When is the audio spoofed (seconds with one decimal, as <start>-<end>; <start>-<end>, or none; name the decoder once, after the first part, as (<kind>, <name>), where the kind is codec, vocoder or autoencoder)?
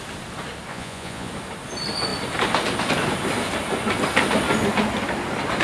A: 0.7-1.3 (vocoder, Vocos)